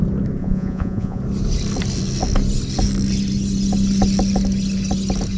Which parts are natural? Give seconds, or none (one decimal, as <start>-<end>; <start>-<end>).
0.0-0.4; 1.2-5.4